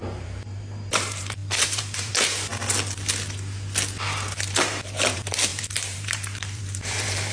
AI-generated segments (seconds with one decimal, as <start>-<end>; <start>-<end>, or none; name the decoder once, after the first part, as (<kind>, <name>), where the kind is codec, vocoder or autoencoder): 0.0-2.5 (vocoder, BigVGAN v2); 4.5-7.3